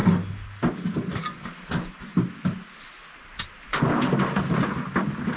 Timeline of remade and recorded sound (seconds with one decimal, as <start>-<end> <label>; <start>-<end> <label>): 0.0-5.4 recorded